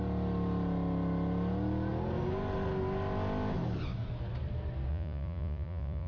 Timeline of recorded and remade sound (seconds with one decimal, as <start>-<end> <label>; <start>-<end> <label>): 0.0-4.9 recorded; 4.9-6.1 remade